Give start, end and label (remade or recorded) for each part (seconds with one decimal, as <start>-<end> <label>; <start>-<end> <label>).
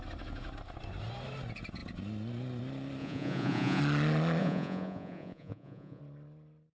0.0-3.0 recorded; 3.0-3.8 remade; 3.8-4.4 recorded; 4.4-6.0 remade; 6.0-6.8 recorded